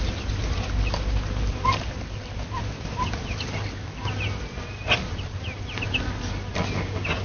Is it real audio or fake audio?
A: real